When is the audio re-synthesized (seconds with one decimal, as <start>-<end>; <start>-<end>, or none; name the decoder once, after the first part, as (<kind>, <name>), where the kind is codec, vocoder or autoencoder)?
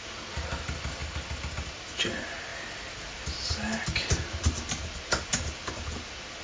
none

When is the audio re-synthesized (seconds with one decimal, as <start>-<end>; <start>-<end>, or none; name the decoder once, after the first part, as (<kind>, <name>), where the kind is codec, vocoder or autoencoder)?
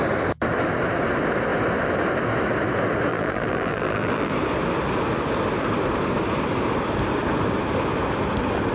3.1-4.3 (vocoder, BigVGAN v2)